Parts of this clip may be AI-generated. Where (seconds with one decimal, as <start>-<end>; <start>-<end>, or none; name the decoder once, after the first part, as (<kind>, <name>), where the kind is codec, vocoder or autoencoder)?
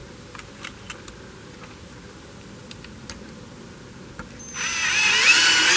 none